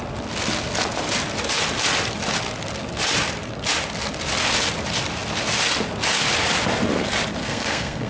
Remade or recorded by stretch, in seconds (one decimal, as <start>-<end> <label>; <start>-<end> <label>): 0.0-7.4 recorded; 7.4-8.1 remade